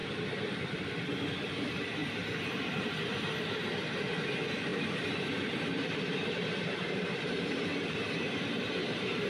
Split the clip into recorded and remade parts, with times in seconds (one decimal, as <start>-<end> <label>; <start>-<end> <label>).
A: 0.0-2.0 recorded; 2.0-3.7 remade; 3.7-4.7 recorded; 4.7-9.3 remade